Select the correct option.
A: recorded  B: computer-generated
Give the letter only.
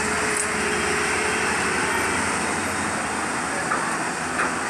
A